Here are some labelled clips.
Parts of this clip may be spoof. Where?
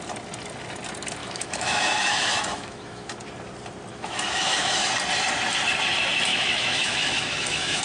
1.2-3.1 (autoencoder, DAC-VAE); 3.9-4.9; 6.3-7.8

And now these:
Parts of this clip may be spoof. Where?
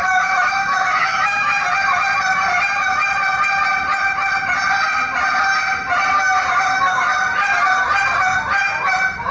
0.0-1.5 (autoencoder, DAC-VAE); 6.5-7.1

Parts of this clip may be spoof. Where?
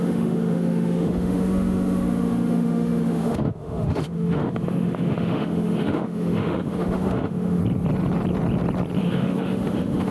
0.0-7.6 (autoencoder, DAC-VAE); 9.0-10.1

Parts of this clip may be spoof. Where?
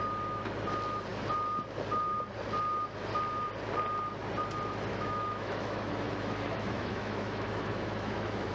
4.9-8.5 (autoencoder, DAC-VAE)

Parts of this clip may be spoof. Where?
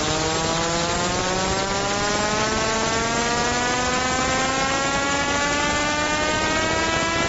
none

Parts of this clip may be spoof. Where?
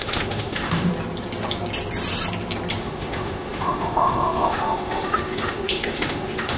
0.0-0.9 (autoencoder, DAC-VAE); 2.8-6.6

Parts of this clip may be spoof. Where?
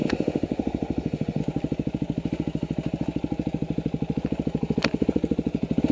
0.0-1.4 (autoencoder, DAC-VAE)